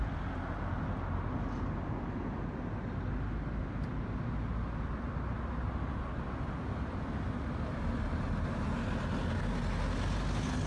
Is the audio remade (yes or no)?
no